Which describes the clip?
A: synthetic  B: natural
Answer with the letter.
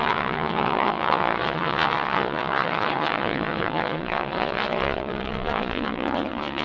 A